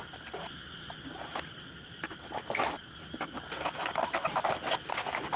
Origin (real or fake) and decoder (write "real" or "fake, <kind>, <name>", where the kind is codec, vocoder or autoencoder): real